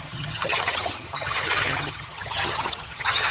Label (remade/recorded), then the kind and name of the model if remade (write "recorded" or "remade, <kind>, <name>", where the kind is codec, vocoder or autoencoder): remade, vocoder, HiFi-GAN